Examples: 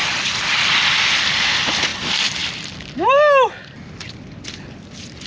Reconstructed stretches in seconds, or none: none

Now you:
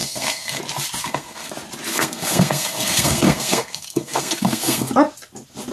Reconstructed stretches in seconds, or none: 0.0-0.6; 1.0-1.5; 1.9-4.9

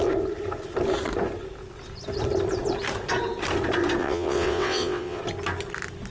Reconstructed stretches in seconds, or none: 4.0-5.2

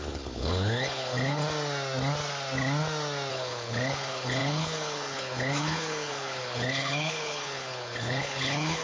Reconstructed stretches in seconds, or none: 0.0-1.4; 3.3-8.8

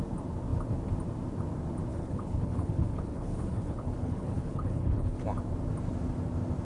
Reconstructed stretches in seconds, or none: 1.9-5.2

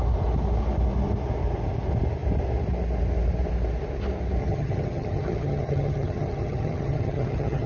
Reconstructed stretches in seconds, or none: 4.4-7.7